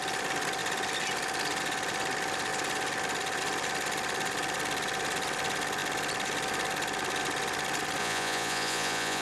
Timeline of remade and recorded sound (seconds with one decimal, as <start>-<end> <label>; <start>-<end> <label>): 0.0-8.0 recorded; 8.0-9.2 remade